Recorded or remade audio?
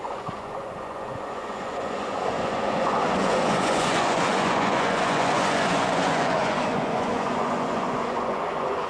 remade